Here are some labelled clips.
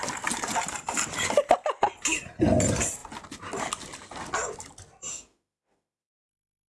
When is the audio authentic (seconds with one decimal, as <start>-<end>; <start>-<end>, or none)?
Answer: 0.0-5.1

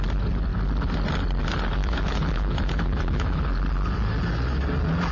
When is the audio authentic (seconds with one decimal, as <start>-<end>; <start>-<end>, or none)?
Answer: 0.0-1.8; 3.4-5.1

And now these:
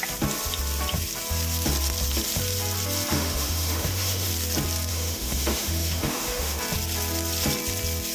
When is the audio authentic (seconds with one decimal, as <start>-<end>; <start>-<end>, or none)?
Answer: 0.0-3.1; 4.3-4.9; 6.6-8.1

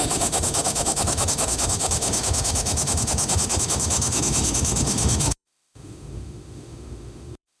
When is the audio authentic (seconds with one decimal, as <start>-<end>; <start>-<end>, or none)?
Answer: none

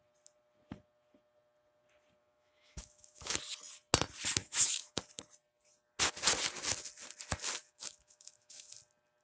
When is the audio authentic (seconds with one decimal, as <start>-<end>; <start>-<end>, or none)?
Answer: 0.0-2.2; 3.4-4.4; 5.0-7.6; 8.7-9.2

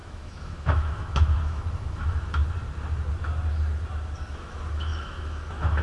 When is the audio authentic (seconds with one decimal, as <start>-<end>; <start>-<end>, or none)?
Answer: 2.4-4.2

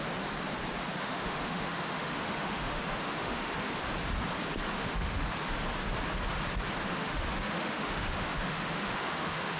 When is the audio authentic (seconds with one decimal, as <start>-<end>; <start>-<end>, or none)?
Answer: 0.0-1.0; 3.8-4.7; 5.3-6.9

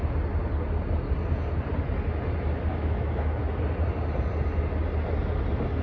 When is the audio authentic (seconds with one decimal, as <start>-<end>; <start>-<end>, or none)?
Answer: 0.0-2.7; 3.4-5.8